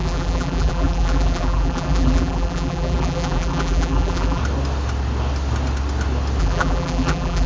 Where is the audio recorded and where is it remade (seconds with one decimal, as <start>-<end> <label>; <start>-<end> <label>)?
0.0-4.4 remade; 4.4-6.4 recorded; 6.4-7.5 remade